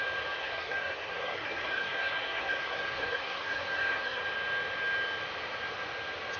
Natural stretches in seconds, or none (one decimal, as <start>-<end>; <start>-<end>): 0.0-0.4; 4.2-6.4